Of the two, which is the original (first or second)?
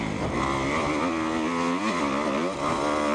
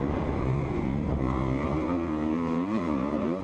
first